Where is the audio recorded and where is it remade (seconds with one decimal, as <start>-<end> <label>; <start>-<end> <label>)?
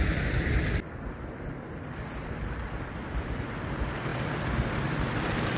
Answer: 0.0-5.6 recorded